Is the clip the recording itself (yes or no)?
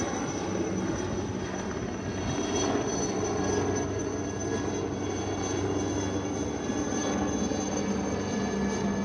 yes